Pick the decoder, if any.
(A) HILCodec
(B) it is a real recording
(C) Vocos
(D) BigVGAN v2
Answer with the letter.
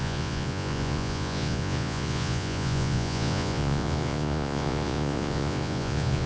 C